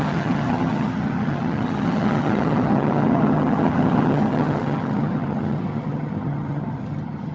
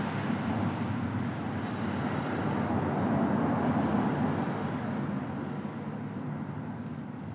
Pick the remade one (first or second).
first